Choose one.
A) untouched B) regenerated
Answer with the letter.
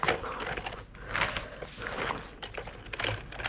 A